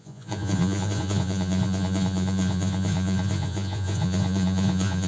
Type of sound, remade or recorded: remade